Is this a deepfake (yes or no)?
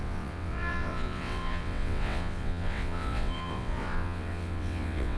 yes